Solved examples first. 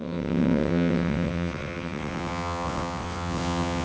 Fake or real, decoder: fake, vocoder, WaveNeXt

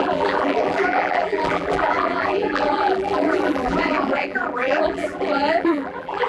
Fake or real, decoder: fake, vocoder, BigVGAN v2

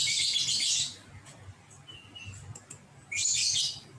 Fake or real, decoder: real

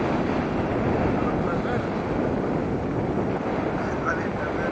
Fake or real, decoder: real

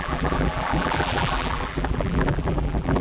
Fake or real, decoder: fake, vocoder, BigVGAN v2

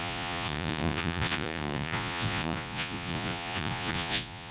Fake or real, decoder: fake, vocoder, Vocos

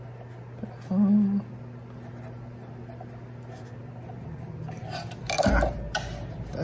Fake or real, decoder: real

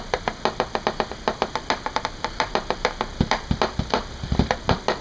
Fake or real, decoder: real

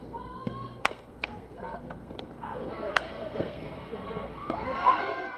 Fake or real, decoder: fake, codec, SNAC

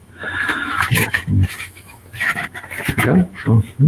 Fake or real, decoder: fake, autoencoder, DAC-VAE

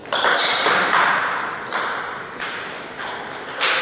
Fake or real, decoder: real